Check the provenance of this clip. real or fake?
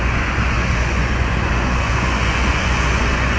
fake